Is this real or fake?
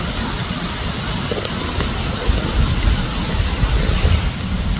real